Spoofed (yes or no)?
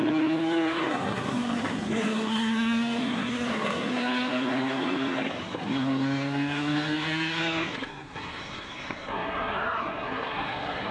yes